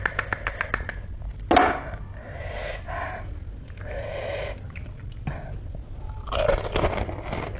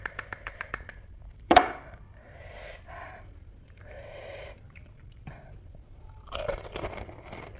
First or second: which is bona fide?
first